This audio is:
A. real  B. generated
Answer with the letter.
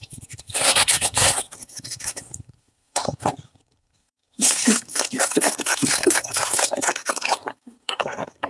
B